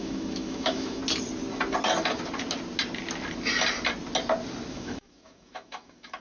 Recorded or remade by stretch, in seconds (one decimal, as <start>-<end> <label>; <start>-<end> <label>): 0.0-1.0 remade; 1.0-4.7 recorded; 4.7-6.2 remade

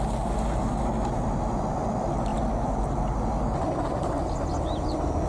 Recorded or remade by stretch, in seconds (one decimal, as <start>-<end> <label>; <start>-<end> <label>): 0.0-5.3 recorded

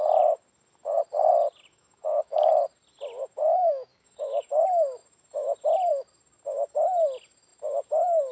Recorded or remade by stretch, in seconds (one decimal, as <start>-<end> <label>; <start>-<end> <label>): 0.0-1.7 recorded; 1.7-2.5 remade; 2.5-3.4 recorded; 3.4-4.6 remade; 4.6-8.3 recorded